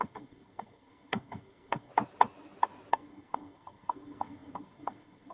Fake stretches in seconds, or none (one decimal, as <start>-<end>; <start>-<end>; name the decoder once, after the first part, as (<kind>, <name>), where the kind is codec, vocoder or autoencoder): 0.0-1.9 (codec, SNAC); 2.9-5.3